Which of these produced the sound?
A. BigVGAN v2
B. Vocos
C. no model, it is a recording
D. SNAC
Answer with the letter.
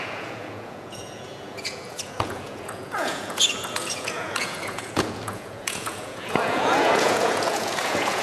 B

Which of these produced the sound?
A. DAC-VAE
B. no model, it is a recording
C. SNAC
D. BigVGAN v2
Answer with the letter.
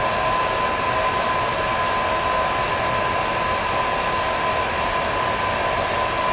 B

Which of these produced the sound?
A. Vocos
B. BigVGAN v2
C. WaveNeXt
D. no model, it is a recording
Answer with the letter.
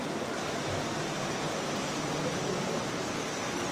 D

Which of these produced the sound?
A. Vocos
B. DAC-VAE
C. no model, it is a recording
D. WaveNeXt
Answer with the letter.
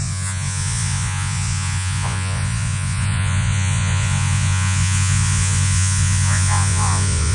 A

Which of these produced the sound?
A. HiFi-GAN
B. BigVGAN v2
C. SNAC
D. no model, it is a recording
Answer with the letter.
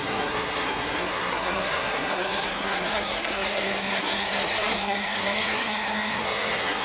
C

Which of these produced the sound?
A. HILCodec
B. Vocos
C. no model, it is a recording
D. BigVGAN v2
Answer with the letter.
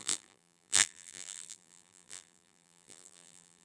D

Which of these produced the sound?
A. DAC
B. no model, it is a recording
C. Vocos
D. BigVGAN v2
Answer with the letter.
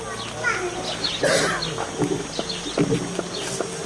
B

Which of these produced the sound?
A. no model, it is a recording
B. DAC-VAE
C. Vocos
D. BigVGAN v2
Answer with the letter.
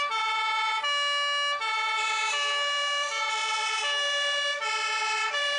A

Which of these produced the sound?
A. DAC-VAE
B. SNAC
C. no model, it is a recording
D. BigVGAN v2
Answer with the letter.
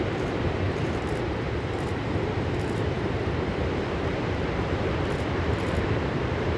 D